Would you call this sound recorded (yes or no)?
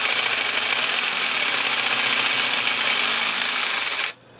yes